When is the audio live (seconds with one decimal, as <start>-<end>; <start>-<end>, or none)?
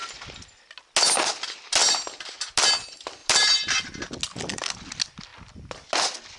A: 0.0-6.4